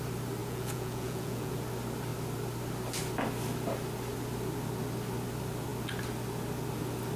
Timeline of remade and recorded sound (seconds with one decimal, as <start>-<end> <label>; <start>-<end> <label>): 0.0-0.4 recorded; 0.4-1.5 remade; 1.5-7.2 recorded